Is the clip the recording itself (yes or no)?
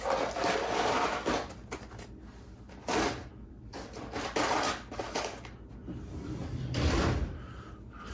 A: yes